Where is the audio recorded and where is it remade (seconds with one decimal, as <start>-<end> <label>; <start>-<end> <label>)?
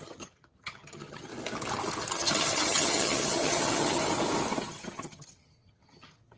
0.0-1.3 remade; 1.3-2.1 recorded; 2.1-4.0 remade; 4.0-4.6 recorded; 4.6-6.4 remade